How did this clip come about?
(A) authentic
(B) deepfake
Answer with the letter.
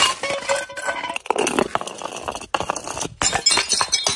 A